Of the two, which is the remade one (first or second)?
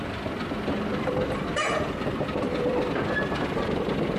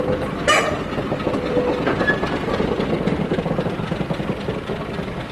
first